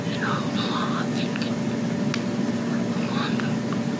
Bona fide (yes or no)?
yes